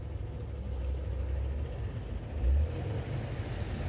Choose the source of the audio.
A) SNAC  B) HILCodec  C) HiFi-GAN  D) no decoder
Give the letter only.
D